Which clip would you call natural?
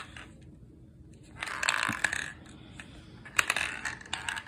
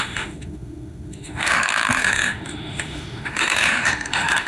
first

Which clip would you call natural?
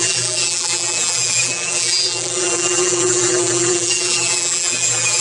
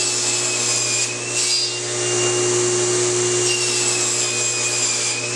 second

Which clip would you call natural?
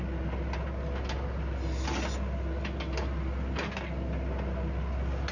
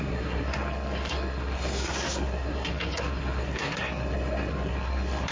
first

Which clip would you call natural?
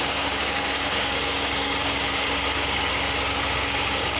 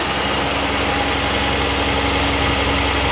second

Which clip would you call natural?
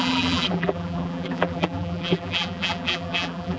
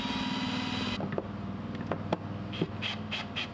second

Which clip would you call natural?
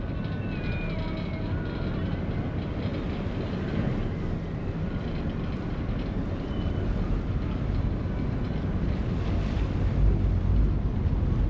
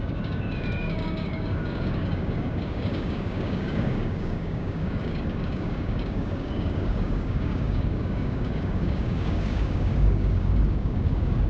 first